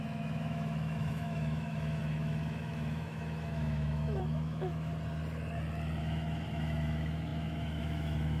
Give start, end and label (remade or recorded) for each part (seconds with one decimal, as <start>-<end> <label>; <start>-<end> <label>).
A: 0.0-4.9 remade; 4.9-6.0 recorded; 6.0-8.4 remade